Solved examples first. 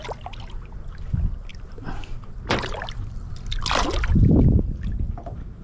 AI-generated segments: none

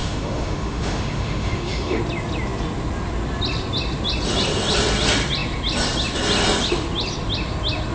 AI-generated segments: 0.0-2.0

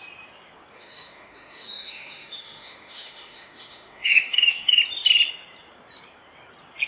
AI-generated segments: 0.7-4.8